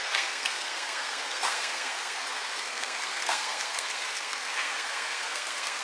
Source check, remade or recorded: remade